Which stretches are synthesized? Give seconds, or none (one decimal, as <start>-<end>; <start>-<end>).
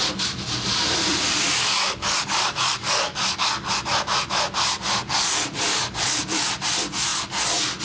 1.6-3.7; 5.7-6.5